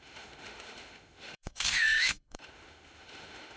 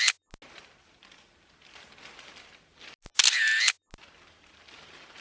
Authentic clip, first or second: second